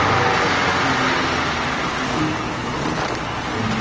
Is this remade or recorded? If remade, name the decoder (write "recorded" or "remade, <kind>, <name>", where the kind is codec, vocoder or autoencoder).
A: recorded